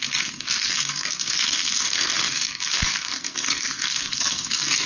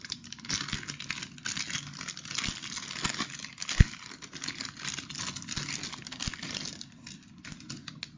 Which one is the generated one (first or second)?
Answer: first